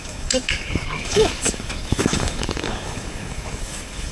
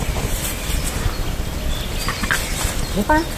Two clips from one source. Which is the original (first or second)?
second